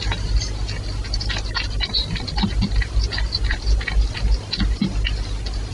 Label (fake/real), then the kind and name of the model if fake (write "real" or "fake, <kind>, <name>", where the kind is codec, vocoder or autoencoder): real